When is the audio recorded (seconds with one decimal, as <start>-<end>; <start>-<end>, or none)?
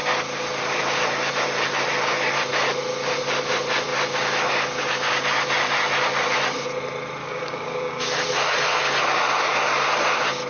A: 0.0-7.2; 8.1-10.5